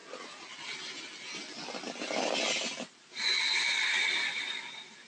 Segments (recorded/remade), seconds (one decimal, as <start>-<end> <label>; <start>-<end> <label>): 0.0-5.1 recorded